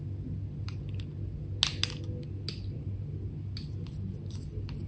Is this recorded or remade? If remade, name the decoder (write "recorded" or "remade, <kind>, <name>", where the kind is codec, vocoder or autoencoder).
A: recorded